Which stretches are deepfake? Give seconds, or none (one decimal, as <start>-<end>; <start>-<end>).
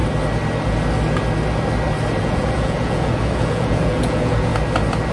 2.2-4.5